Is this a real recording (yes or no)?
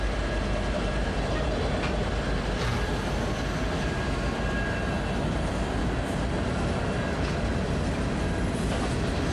yes